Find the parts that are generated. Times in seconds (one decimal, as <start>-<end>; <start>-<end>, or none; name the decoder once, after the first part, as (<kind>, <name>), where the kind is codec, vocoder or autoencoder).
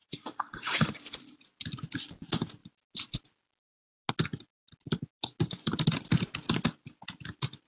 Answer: 0.0-1.2 (vocoder, BigVGAN v2)